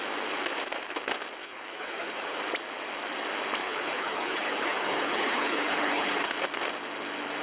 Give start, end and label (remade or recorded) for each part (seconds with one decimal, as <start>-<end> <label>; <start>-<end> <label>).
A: 0.0-1.4 recorded; 1.4-2.4 remade; 2.4-3.6 recorded; 3.6-6.3 remade; 6.3-7.4 recorded